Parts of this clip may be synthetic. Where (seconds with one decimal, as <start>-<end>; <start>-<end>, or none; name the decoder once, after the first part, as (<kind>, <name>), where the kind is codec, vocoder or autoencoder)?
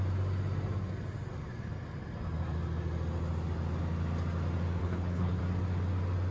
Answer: 4.8-5.4 (codec, HILCodec)